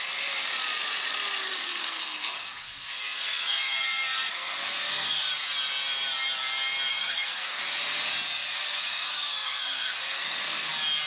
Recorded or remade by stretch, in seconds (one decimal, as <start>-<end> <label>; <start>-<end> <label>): 0.0-1.5 recorded; 1.5-5.3 remade; 5.3-6.9 recorded; 6.9-7.6 remade; 7.6-8.6 recorded; 8.6-10.7 remade; 10.7-11.1 recorded